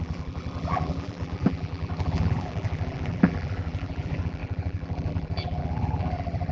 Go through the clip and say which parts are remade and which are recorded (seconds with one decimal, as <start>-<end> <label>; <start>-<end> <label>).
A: 0.0-6.5 remade